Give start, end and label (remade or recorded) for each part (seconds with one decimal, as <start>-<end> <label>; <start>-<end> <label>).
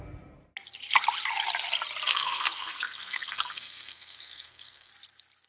0.0-2.1 recorded; 2.1-4.9 remade; 4.9-5.5 recorded